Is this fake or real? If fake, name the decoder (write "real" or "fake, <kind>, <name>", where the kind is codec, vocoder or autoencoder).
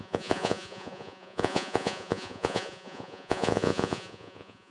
fake, vocoder, Vocos